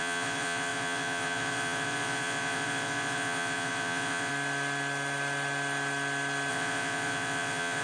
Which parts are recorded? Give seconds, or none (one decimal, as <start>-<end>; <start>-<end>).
4.3-6.5